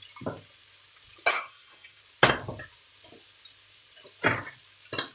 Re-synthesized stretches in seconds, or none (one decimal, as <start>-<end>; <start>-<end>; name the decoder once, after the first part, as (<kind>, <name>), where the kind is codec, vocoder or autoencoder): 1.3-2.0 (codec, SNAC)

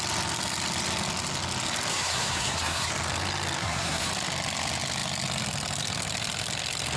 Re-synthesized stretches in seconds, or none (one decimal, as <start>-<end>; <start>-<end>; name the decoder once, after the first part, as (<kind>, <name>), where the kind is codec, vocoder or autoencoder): 1.9-2.9 (codec, SNAC); 3.6-4.1

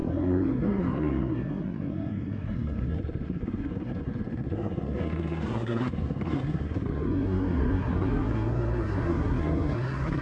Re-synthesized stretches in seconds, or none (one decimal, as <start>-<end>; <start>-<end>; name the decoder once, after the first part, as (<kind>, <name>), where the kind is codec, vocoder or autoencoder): 0.0-10.2 (codec, SNAC)